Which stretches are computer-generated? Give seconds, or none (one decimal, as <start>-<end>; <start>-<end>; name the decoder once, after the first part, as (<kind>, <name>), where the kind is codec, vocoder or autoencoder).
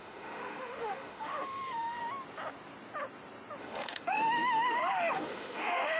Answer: 0.0-2.0 (autoencoder, DAC-VAE); 3.6-6.0